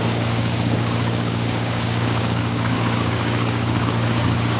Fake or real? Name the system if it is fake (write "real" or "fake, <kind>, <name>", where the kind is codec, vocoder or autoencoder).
fake, codec, DAC